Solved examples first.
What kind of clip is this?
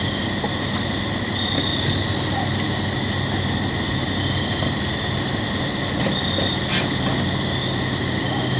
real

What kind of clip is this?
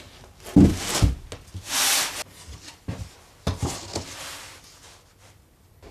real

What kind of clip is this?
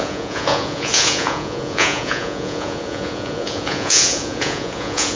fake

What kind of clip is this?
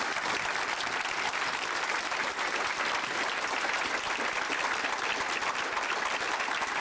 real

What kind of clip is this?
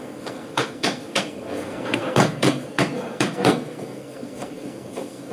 fake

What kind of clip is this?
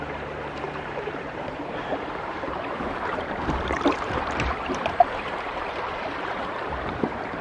fake